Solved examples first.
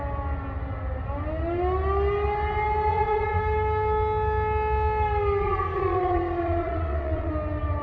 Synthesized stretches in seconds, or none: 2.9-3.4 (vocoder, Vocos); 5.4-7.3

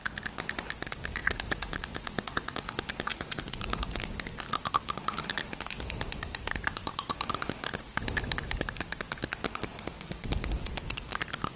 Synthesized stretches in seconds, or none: 1.2-2.7 (vocoder, Vocos); 3.1-4.0

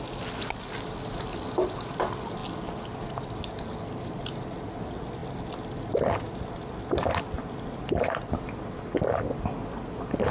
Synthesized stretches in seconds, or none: none